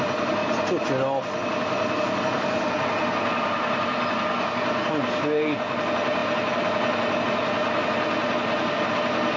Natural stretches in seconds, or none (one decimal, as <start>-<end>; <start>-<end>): 0.0-9.4